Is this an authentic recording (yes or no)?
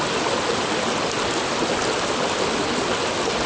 yes